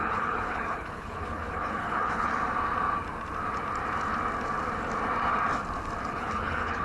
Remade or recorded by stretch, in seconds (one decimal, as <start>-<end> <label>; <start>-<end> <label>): 0.0-2.3 remade; 2.3-6.1 recorded; 6.1-6.8 remade